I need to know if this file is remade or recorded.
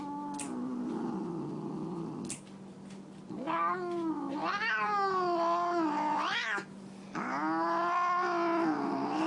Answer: recorded